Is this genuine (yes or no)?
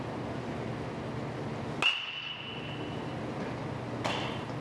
yes